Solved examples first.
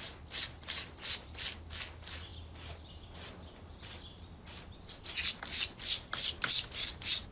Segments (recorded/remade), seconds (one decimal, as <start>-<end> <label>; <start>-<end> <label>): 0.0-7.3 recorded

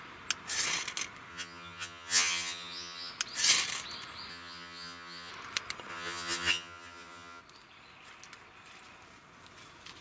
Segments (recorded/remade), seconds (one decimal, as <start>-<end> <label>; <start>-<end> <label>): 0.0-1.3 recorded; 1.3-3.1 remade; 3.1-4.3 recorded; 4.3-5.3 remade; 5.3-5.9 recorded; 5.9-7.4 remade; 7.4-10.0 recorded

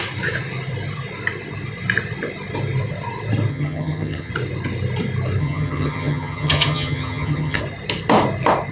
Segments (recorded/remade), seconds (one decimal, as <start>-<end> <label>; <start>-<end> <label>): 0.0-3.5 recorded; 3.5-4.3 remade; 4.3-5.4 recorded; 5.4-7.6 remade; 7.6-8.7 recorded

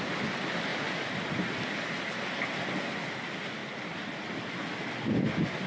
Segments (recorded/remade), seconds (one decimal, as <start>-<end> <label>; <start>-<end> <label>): 0.0-5.7 recorded

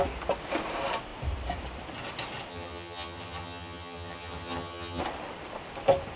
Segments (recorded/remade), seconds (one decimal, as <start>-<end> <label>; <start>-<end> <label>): 0.0-2.5 recorded; 2.5-5.0 remade; 5.0-6.2 recorded